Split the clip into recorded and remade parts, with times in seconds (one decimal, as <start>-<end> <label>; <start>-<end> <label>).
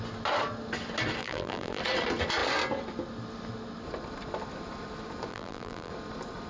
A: 0.0-1.2 recorded; 1.2-1.8 remade; 1.8-5.3 recorded; 5.3-5.9 remade; 5.9-6.5 recorded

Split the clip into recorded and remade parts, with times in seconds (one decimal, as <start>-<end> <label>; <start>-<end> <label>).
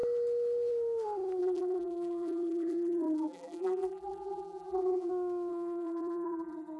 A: 0.0-1.4 recorded; 1.4-5.1 remade; 5.1-5.5 recorded; 5.5-6.8 remade